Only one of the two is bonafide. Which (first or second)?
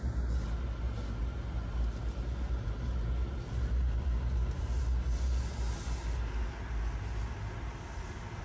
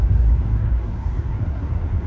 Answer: first